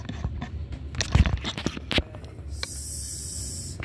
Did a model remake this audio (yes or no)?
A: no